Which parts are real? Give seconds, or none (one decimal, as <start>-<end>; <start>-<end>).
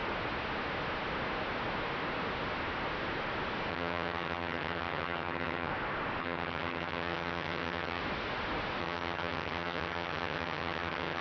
0.0-3.7; 5.7-6.2; 8.0-8.8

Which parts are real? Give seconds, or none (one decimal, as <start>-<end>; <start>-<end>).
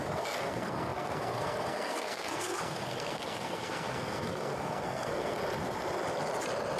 5.4-6.8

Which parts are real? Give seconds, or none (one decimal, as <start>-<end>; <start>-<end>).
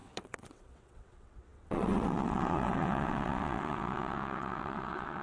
none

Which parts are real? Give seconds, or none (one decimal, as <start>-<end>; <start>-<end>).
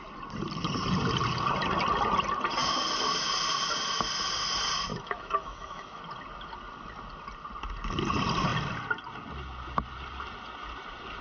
0.0-4.9; 6.0-11.2